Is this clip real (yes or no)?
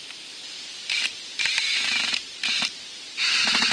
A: no